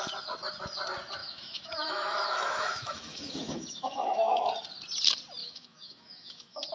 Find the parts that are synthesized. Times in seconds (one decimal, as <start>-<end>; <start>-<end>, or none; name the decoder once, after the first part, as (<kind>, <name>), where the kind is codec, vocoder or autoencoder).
1.2-4.5 (autoencoder, DAC-VAE); 5.4-6.7